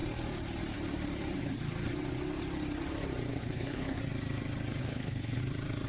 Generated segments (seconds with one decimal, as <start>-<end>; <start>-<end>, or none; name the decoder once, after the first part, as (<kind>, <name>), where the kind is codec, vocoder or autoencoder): 3.3-4.0 (codec, HILCodec); 4.8-5.4